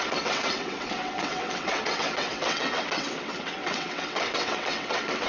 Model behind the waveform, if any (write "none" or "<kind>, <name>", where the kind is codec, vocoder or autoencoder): vocoder, WaveNeXt